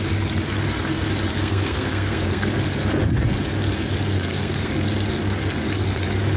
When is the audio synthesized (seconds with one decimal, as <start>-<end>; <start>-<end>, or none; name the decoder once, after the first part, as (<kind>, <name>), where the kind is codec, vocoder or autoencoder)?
1.4-2.5 (codec, SNAC); 4.1-4.7